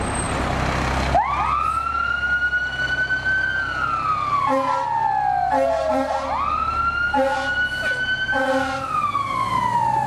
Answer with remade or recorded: recorded